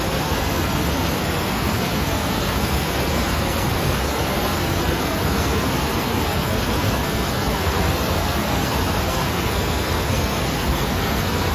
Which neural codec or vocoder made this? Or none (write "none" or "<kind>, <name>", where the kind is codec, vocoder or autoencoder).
codec, SNAC